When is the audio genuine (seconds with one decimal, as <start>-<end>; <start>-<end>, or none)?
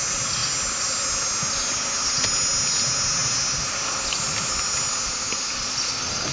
0.0-6.3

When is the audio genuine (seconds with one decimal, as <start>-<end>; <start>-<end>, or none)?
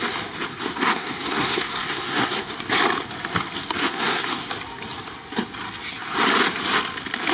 0.0-0.5; 2.5-3.8; 4.5-7.3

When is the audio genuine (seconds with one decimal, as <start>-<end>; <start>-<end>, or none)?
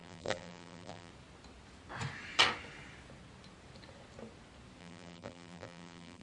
1.1-4.8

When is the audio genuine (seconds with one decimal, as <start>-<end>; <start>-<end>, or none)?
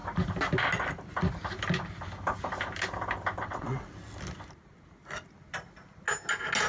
0.0-3.4; 3.9-6.7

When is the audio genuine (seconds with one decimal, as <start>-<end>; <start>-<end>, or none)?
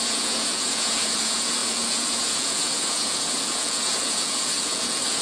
none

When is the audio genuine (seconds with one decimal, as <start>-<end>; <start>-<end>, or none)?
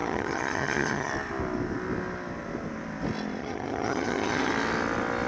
1.1-3.4; 4.5-5.3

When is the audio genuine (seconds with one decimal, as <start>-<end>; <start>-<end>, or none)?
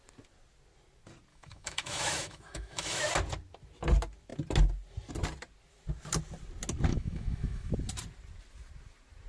0.0-1.3; 3.0-6.9; 7.7-9.3